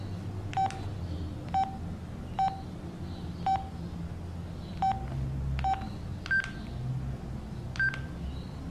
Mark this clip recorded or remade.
recorded